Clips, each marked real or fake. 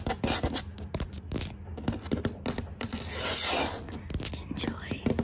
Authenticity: real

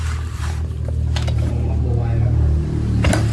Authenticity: real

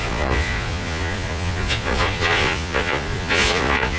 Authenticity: fake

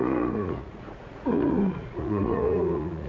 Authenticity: fake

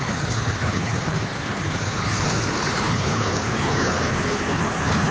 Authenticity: fake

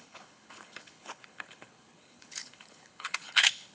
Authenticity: fake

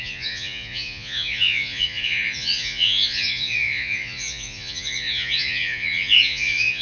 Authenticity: fake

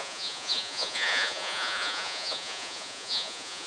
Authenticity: fake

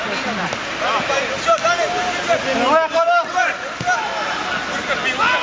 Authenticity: real